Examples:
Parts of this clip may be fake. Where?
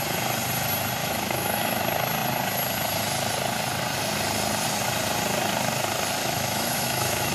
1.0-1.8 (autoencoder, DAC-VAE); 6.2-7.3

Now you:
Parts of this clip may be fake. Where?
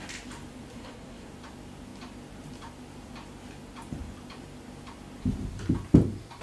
0.7-1.3 (codec, SNAC)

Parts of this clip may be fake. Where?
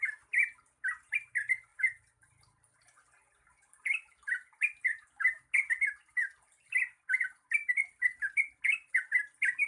none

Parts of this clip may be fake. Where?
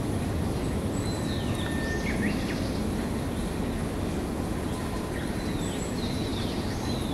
none